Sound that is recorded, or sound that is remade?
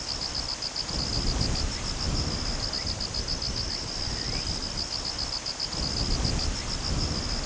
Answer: recorded